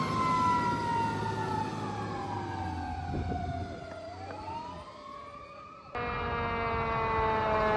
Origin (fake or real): real